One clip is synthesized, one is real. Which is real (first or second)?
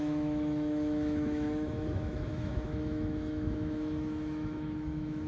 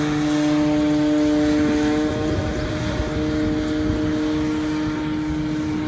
second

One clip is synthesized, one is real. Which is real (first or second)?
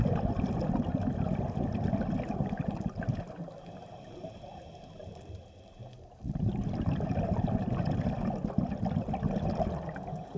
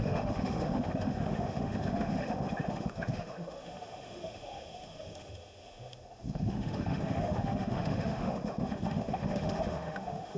first